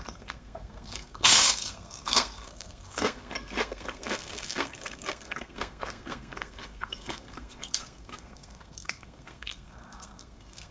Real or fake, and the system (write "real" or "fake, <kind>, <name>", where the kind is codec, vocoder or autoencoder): fake, codec, SNAC